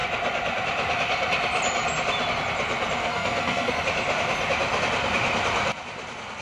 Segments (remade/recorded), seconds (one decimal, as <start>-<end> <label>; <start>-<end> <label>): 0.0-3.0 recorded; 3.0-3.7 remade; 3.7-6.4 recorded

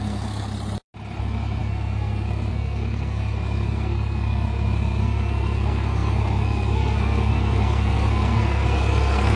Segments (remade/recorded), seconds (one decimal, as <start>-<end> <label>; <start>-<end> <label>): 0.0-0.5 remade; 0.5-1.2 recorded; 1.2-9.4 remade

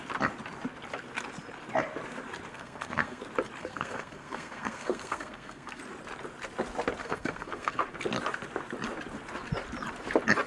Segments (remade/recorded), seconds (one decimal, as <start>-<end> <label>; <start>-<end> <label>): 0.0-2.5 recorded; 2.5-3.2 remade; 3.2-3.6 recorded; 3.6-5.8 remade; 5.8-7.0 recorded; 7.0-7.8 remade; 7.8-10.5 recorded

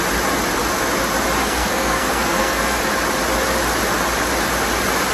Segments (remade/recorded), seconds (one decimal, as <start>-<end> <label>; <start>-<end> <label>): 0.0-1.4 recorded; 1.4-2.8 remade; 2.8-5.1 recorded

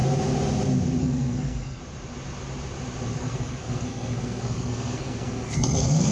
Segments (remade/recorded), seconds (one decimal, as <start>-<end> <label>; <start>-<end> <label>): 0.0-1.0 recorded; 1.0-1.8 remade; 1.8-3.2 recorded; 3.2-6.1 remade